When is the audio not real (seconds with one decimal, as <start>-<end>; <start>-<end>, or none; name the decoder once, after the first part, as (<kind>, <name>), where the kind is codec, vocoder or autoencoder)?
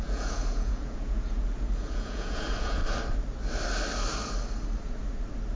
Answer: 0.0-2.8 (vocoder, Vocos)